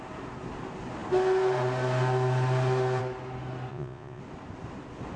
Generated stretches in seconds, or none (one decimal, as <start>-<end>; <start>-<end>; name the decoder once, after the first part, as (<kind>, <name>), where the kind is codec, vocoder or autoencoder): 3.7-4.2 (vocoder, Vocos)